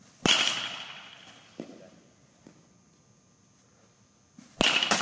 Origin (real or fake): real